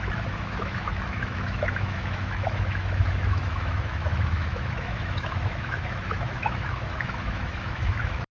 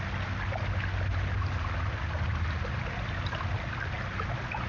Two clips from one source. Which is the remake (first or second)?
first